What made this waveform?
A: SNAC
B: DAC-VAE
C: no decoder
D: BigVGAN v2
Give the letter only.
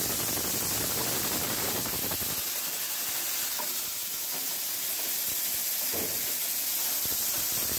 C